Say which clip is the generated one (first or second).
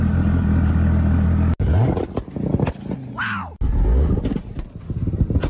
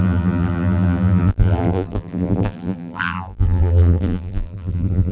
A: second